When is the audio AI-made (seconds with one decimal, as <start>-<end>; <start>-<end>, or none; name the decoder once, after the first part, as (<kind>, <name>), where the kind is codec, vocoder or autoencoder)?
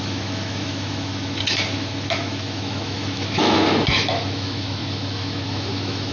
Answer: 0.0-6.1 (autoencoder, DAC-VAE)